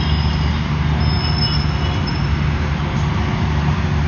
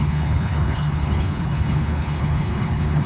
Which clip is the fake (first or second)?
second